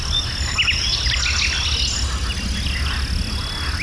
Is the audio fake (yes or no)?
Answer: no